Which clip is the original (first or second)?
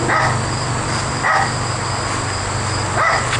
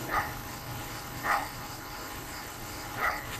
first